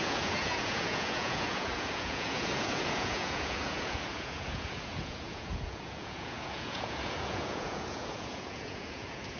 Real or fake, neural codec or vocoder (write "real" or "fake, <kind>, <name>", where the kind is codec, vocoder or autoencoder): fake, vocoder, Vocos